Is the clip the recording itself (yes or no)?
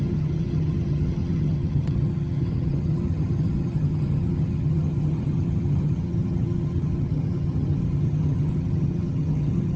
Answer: no